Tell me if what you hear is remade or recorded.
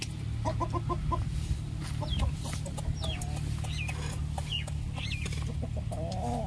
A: recorded